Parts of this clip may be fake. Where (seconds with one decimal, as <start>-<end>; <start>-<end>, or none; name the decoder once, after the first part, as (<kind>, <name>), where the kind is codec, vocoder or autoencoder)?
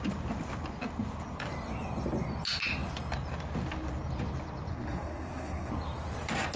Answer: 4.7-5.7 (codec, SNAC)